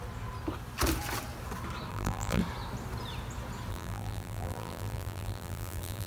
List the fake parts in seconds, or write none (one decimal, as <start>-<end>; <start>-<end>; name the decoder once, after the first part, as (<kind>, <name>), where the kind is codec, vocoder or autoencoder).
1.9-2.4 (vocoder, BigVGAN v2); 3.7-6.1